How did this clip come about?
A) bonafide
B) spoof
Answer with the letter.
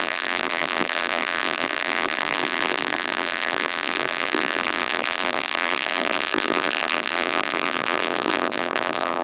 B